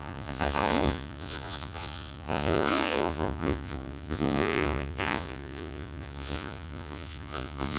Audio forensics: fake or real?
fake